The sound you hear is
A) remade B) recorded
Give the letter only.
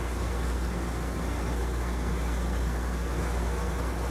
A